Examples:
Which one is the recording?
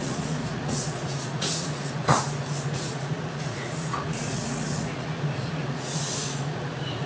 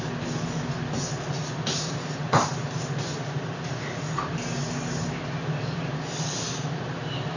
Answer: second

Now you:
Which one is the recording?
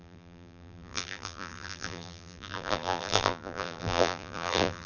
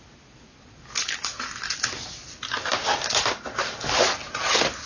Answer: second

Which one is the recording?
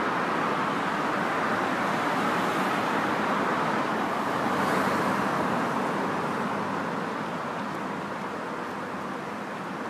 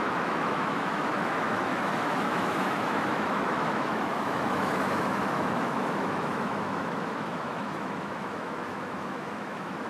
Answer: first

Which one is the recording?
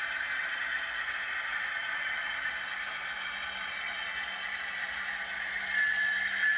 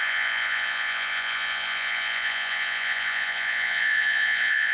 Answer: first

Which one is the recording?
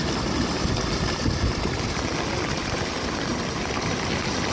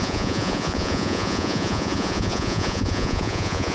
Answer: first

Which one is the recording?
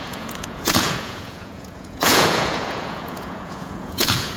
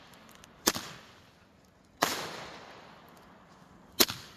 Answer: second